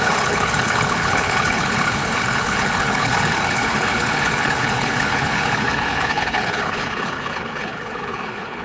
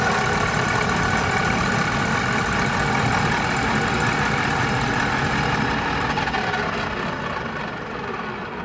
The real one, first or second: second